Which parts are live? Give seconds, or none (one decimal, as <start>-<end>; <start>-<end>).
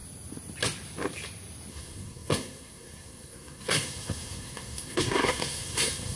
0.0-1.7